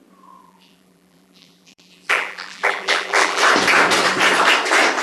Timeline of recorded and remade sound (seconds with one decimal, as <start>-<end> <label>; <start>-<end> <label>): 0.0-0.4 recorded; 0.4-3.4 remade; 3.4-5.0 recorded